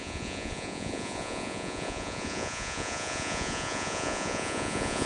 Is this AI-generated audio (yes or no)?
yes